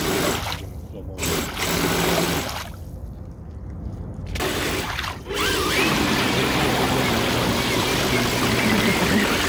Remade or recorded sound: recorded